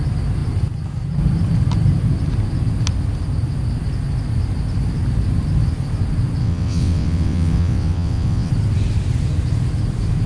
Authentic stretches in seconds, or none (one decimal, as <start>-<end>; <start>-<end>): 0.0-6.4; 8.5-10.3